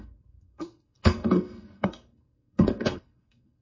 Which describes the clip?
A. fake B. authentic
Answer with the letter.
A